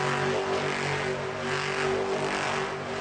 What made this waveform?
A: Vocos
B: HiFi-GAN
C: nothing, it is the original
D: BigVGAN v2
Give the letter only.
C